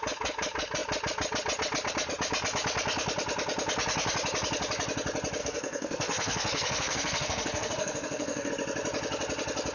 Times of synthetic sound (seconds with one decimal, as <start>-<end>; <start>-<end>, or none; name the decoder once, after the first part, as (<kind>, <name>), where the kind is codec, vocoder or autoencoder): 5.4-8.5 (codec, SNAC)